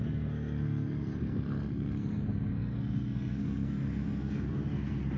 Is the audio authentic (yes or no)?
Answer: no